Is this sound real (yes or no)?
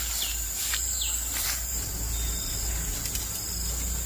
yes